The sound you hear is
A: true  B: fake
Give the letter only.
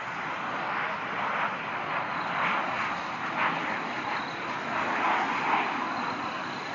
A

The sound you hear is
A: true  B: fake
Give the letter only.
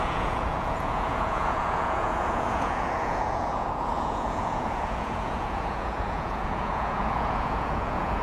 B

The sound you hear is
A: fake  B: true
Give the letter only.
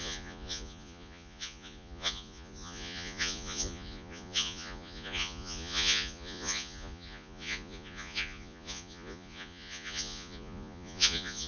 A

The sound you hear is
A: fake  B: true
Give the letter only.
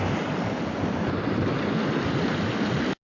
B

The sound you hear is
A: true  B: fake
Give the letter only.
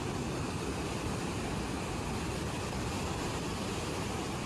A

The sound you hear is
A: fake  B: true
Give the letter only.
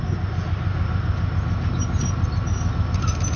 B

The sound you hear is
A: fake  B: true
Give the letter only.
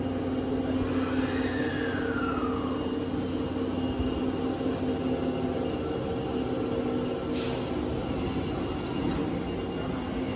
B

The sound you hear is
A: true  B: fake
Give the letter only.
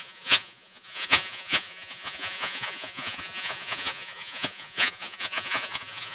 B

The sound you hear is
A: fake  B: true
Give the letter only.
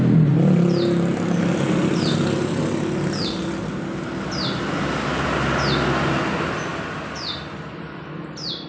B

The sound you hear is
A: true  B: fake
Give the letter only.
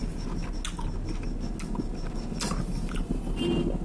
A